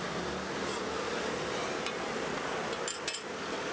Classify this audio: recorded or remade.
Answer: recorded